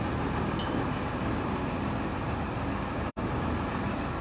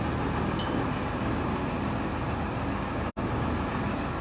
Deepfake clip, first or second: first